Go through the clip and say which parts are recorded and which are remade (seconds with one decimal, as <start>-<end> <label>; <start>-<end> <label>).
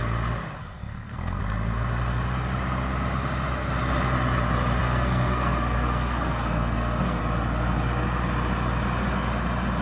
0.0-0.6 recorded; 0.6-1.4 remade; 1.4-4.8 recorded; 4.8-7.2 remade; 7.2-9.8 recorded